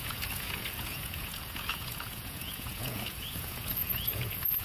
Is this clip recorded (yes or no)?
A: no